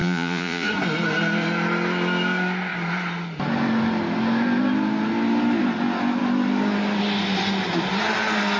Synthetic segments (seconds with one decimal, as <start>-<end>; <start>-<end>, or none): 0.0-0.7